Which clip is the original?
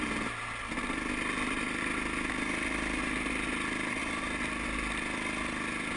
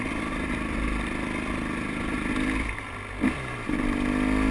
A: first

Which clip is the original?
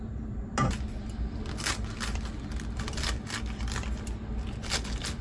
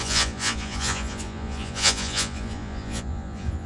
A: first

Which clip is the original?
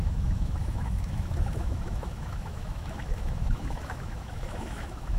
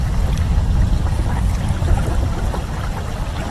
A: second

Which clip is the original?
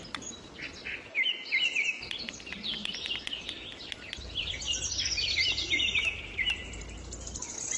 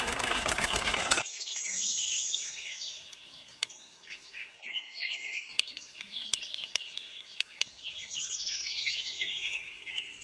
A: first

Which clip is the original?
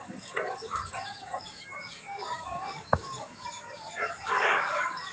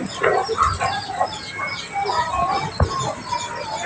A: second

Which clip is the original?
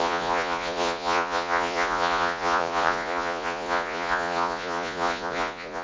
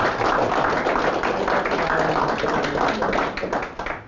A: second